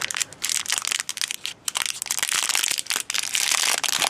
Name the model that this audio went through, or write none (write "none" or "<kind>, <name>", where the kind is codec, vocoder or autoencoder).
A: none